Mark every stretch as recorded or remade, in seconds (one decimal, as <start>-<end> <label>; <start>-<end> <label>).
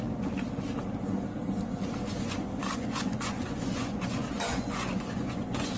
0.0-2.0 recorded; 2.0-5.8 remade